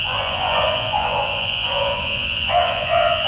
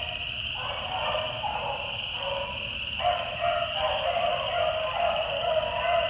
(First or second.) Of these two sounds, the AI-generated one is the first